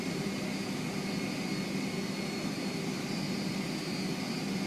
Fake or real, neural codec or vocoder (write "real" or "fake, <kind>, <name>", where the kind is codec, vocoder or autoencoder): real